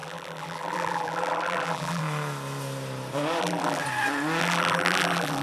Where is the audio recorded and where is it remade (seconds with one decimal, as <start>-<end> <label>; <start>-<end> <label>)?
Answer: 0.0-2.0 remade; 2.0-3.4 recorded; 3.4-3.8 remade; 3.8-4.4 recorded; 4.4-5.4 remade